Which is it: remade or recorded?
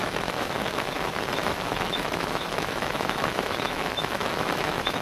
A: remade